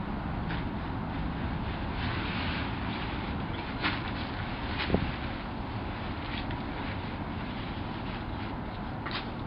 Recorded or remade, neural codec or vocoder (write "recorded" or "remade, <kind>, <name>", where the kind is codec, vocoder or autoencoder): recorded